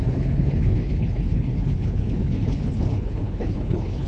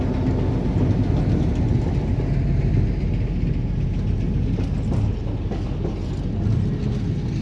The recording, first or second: second